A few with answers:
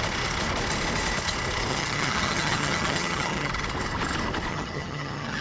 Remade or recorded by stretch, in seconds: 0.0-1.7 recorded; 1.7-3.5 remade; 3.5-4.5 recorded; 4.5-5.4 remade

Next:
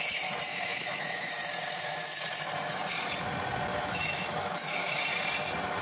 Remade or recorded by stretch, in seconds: 0.0-0.5 recorded; 0.5-1.3 remade; 1.3-3.7 recorded; 3.7-5.0 remade; 5.0-5.8 recorded

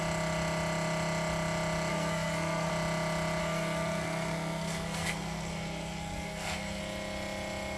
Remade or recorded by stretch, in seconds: 0.0-1.9 recorded; 1.9-2.7 remade; 2.7-3.4 recorded; 3.4-6.8 remade; 6.8-7.8 recorded

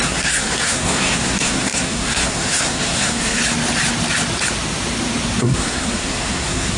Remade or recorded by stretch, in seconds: 0.0-3.4 remade; 3.4-5.4 recorded; 5.4-6.8 remade